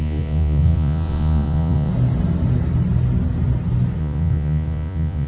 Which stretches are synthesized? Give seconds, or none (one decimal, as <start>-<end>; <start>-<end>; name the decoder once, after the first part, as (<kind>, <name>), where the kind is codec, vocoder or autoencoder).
0.0-1.9 (vocoder, Vocos); 4.0-5.3

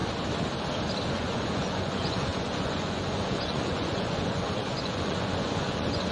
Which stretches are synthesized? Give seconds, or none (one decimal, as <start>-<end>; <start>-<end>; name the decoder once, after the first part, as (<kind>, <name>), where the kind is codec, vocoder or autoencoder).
1.1-6.1 (vocoder, Vocos)

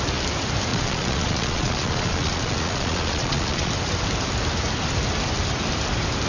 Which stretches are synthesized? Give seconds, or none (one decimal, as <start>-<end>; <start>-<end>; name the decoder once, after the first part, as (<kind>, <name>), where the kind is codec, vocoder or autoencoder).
0.7-3.7 (vocoder, Vocos)

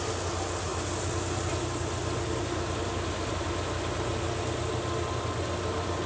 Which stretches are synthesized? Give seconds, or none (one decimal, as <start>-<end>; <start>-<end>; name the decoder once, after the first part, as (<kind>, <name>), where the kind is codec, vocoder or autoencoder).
none

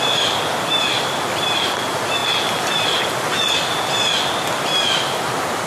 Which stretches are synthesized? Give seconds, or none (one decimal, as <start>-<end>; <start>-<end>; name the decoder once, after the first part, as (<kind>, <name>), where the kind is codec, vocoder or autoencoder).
none

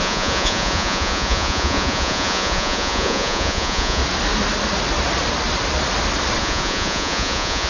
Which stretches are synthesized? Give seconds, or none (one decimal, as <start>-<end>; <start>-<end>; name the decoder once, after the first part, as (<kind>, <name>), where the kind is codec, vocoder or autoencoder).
0.0-4.0 (vocoder, Vocos); 6.4-7.7

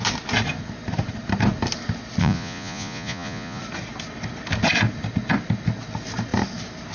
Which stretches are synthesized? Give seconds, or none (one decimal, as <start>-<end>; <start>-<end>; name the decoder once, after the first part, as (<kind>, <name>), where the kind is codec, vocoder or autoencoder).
2.2-3.6 (vocoder, Vocos)

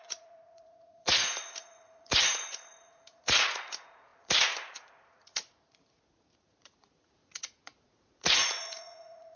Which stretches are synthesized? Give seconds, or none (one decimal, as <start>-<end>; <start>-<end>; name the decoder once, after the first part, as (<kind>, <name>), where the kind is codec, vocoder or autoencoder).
0.0-9.4 (vocoder, Vocos)